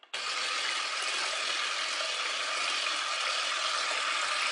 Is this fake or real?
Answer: real